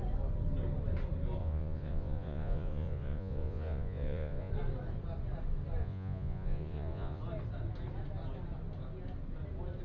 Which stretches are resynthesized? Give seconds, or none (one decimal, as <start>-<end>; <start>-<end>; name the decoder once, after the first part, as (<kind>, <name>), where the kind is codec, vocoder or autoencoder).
1.4-4.5 (vocoder, Vocos); 5.8-7.2